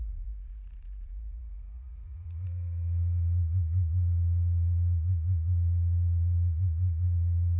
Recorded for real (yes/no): no